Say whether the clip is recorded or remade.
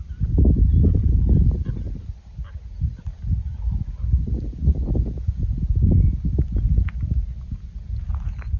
recorded